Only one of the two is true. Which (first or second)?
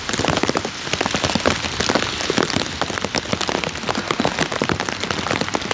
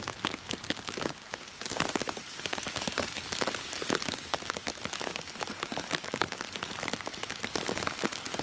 first